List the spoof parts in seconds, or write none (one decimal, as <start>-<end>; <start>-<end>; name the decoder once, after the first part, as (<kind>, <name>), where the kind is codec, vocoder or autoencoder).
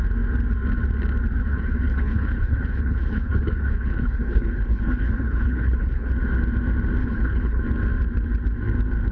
1.5-6.1 (codec, HILCodec); 7.0-7.6